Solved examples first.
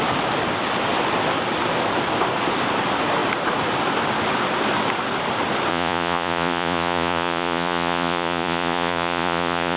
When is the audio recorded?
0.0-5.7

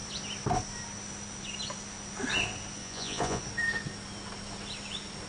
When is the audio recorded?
0.0-2.8; 3.4-5.3

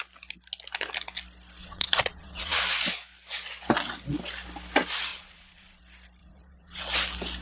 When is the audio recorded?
0.0-1.6; 2.6-5.1; 5.8-6.2; 6.8-7.4

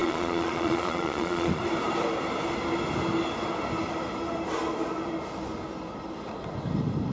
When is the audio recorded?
1.6-7.1

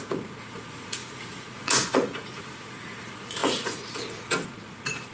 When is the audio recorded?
none

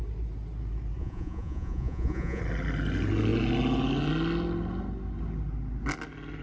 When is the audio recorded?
0.0-1.0; 2.4-6.4

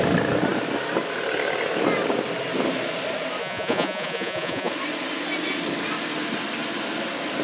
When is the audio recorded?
0.0-3.4; 4.7-7.4